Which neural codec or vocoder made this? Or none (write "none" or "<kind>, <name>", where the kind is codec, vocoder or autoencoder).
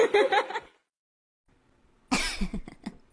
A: none